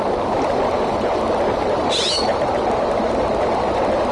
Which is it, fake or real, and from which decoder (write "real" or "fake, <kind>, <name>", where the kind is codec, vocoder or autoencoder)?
real